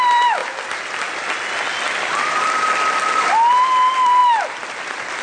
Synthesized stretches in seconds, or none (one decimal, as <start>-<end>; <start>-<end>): 0.0-5.2